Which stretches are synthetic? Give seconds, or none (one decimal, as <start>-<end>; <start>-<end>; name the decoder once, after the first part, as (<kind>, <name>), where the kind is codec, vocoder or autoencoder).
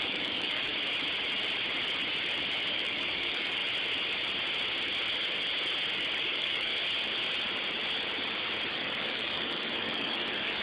0.0-0.7 (codec, DAC); 2.7-3.6; 6.2-6.7; 8.7-10.6